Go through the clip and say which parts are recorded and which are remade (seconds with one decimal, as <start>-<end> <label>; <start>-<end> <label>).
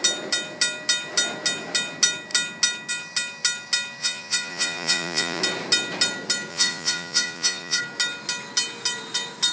0.0-4.0 recorded; 4.0-5.4 remade; 5.4-6.5 recorded; 6.5-7.8 remade; 7.8-9.5 recorded